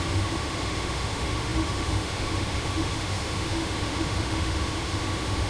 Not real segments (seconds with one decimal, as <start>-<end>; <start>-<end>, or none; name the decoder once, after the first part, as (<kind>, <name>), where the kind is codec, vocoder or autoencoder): 0.0-5.5 (autoencoder, DAC-VAE)

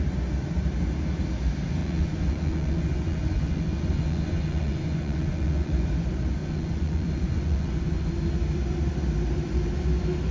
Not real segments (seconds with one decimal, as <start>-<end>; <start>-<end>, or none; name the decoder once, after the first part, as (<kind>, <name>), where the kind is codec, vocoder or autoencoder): 1.8-5.9 (vocoder, Vocos); 6.4-8.1

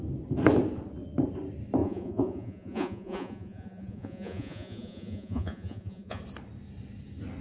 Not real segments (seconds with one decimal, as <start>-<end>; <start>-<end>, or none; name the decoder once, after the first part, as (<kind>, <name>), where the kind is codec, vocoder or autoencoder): 1.8-6.2 (vocoder, Vocos)

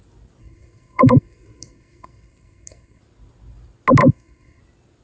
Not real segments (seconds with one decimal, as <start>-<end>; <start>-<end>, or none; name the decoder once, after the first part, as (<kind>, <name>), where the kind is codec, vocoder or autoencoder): 0.4-3.0 (codec, SNAC); 4.0-4.6

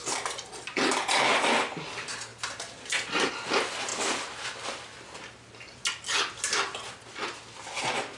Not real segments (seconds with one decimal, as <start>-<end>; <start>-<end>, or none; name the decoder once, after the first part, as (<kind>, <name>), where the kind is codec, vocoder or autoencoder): none

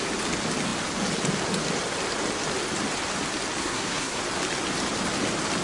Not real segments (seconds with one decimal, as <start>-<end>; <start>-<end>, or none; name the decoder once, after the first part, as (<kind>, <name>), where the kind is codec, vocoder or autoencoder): 3.6-4.2 (codec, SNAC)

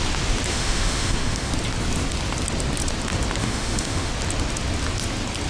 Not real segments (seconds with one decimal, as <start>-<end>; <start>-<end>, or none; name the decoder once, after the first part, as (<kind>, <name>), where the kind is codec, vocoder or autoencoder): 0.5-1.5 (autoencoder, DAC-VAE); 3.4-4.1